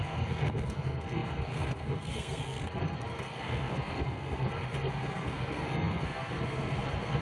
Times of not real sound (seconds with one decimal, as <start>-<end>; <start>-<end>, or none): 0.0-7.2